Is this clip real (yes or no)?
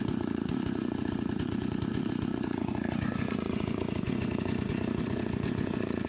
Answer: no